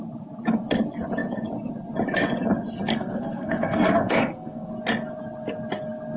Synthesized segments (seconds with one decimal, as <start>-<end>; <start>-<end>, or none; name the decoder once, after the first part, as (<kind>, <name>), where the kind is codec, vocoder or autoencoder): 2.9-4.7 (codec, SNAC)